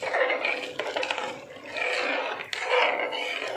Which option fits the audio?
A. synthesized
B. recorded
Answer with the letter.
B